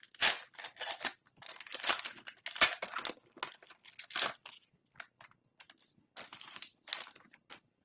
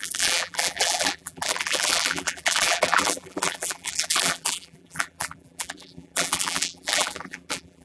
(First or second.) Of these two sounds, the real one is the first